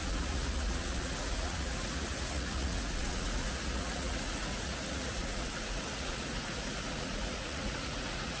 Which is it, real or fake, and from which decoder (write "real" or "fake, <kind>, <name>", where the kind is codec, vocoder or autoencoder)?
fake, vocoder, Vocos